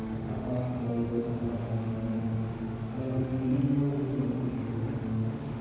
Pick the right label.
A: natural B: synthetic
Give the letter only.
B